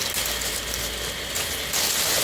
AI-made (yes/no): no